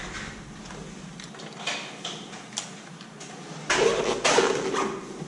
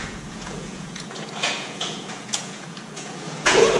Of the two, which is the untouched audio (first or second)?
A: first